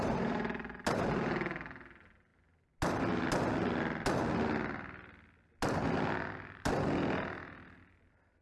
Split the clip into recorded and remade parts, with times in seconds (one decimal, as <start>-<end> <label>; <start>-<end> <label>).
0.0-8.4 recorded